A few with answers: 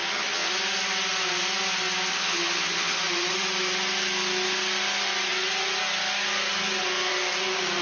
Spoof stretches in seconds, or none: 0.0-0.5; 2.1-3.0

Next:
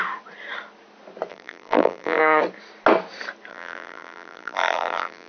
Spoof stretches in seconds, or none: 1.3-2.2; 3.5-5.3